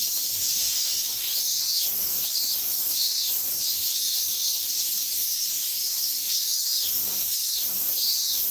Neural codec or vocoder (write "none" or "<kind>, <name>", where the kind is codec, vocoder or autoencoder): codec, DAC